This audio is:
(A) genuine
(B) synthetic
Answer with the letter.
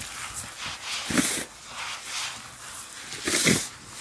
A